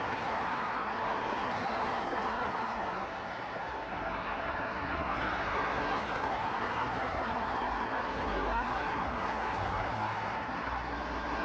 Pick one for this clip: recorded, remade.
remade